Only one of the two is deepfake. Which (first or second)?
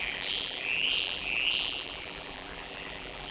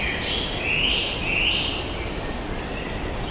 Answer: first